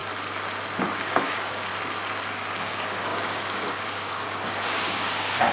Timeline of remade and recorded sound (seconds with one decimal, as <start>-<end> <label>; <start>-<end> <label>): 0.0-1.2 recorded; 1.2-1.7 remade; 1.7-2.3 recorded; 2.3-5.5 remade